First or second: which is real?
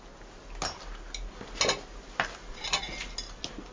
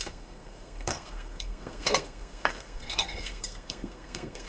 first